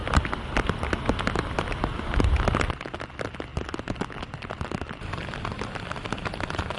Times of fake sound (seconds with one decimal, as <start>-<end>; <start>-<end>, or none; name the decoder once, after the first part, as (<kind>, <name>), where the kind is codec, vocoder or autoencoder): none